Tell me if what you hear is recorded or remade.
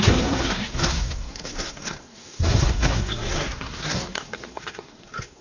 remade